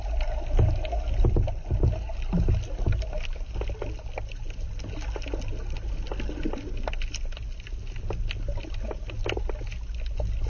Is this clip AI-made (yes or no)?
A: no